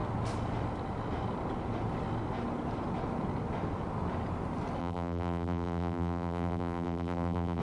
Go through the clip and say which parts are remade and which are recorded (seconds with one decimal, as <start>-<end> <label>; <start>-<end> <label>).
0.0-4.8 recorded; 4.8-7.6 remade